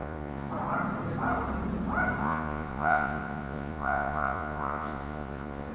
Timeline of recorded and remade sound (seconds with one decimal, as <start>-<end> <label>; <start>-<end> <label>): 0.0-0.5 remade; 0.5-2.2 recorded; 2.2-5.7 remade